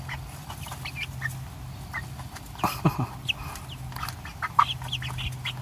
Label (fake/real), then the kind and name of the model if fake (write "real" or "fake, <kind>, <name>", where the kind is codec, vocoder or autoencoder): real